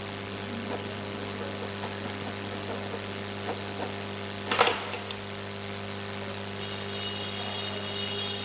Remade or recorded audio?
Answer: recorded